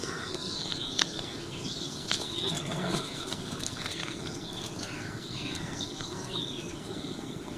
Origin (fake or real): fake